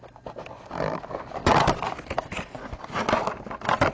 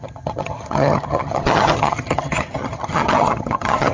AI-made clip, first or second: second